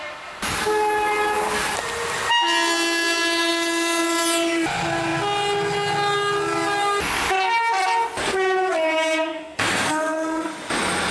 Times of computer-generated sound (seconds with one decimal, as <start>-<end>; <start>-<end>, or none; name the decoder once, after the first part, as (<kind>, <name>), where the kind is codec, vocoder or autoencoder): 9.3-10.5 (codec, SNAC)